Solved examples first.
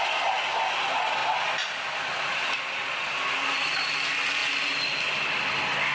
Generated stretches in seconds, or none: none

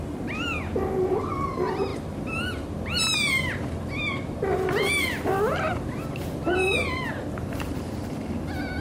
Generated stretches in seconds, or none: 1.9-7.1 (vocoder, BigVGAN v2)

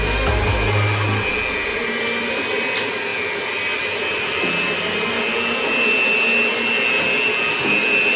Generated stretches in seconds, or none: none

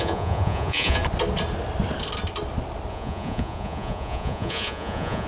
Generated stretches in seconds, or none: 0.0-1.0 (vocoder, Vocos); 2.9-5.3

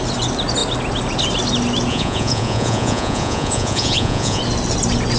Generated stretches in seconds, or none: 1.9-4.4 (vocoder, Vocos)

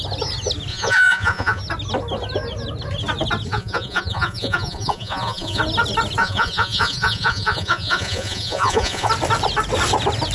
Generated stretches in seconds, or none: 0.7-1.6 (vocoder, Vocos); 3.5-5.6; 6.2-9.1

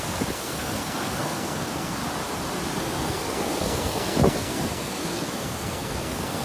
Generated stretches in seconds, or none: 0.0-2.0 (codec, SNAC); 2.8-6.4

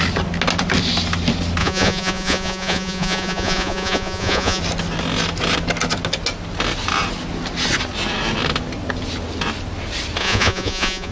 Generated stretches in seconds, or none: 1.6-4.6 (vocoder, Vocos); 10.2-11.1